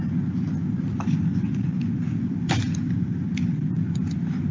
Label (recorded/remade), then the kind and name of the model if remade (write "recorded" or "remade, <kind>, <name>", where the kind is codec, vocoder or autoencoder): recorded